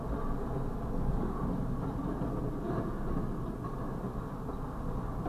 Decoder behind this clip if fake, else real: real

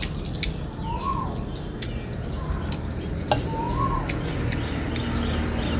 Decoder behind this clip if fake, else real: real